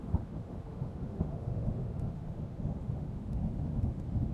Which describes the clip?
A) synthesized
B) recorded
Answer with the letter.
A